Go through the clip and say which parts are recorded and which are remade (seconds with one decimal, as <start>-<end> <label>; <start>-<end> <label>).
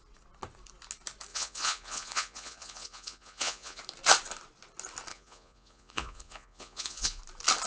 0.0-1.3 recorded; 1.3-3.8 remade; 3.8-5.1 recorded; 5.1-7.2 remade; 7.2-7.7 recorded